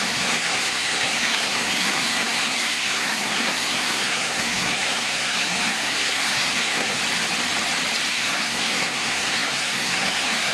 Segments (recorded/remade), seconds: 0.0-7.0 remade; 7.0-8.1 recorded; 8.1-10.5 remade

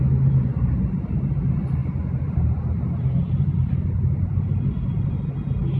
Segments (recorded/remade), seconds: 0.0-5.8 recorded

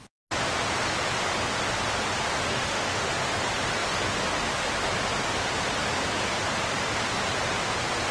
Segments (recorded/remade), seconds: 0.0-2.5 recorded; 2.5-3.1 remade; 3.1-8.1 recorded

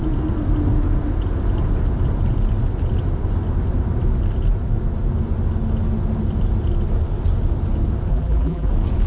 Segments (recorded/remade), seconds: 0.0-8.1 recorded; 8.1-8.7 remade; 8.7-9.1 recorded

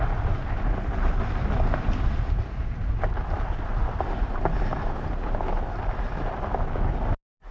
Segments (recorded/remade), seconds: 0.0-7.5 recorded

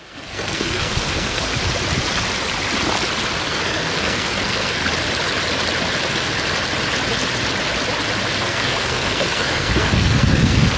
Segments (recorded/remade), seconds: 0.0-1.5 remade; 1.5-3.5 recorded; 3.5-4.8 remade; 4.8-8.4 recorded; 8.4-10.8 remade

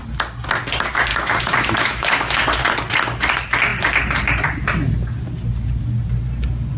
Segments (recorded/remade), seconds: 0.0-1.1 recorded; 1.1-2.4 remade; 2.4-6.8 recorded

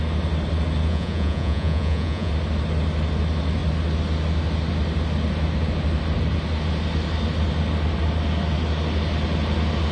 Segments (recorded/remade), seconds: 0.0-0.9 recorded; 0.9-2.3 remade; 2.3-9.9 recorded